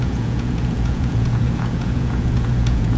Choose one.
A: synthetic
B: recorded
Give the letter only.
A